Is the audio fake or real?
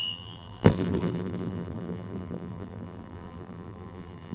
fake